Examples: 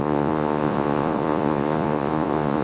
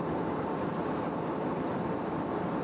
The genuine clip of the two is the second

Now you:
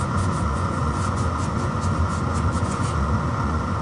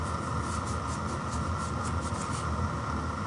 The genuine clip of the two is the second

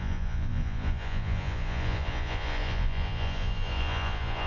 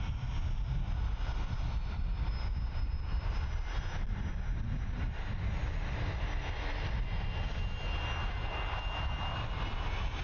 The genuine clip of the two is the second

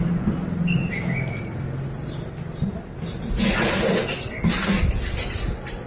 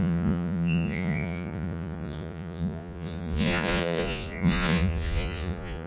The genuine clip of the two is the first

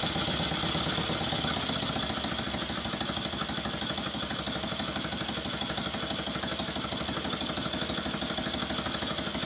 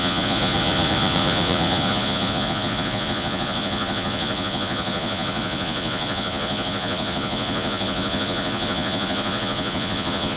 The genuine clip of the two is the first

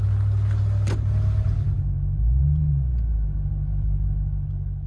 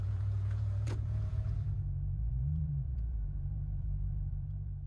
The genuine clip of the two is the first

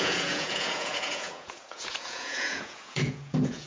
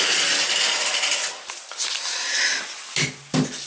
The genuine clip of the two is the second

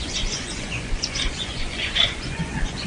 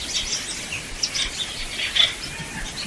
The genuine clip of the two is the second